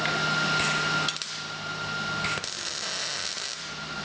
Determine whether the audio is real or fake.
real